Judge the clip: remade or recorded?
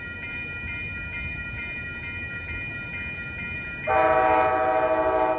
recorded